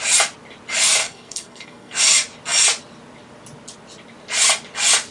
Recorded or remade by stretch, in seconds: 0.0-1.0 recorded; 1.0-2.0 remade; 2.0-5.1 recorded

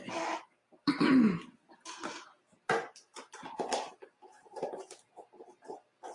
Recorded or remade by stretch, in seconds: 0.0-6.1 recorded

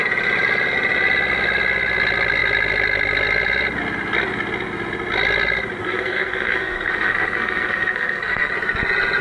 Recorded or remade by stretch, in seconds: 0.0-5.8 recorded; 5.8-8.5 remade; 8.5-9.2 recorded

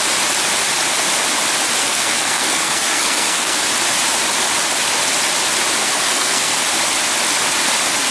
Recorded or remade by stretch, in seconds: 0.0-1.8 recorded; 1.8-3.6 remade; 3.6-5.8 recorded; 5.8-6.6 remade; 6.6-8.1 recorded

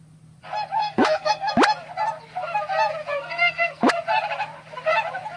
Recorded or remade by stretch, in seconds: 0.0-0.8 recorded; 0.8-1.5 remade; 1.5-3.1 recorded; 3.1-3.9 remade; 3.9-5.4 recorded

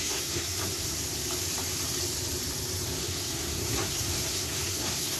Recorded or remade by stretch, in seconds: 0.0-1.0 remade; 1.0-3.0 recorded; 3.0-5.2 remade

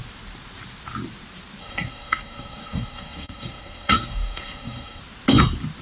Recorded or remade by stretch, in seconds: 0.0-1.6 recorded; 1.6-5.0 remade; 5.0-5.8 recorded